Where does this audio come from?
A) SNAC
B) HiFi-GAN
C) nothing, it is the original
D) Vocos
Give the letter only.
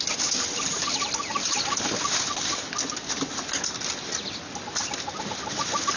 C